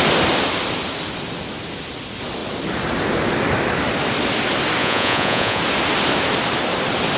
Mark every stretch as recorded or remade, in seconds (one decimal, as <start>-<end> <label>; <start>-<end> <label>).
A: 0.0-4.8 recorded; 4.8-5.6 remade; 5.6-7.2 recorded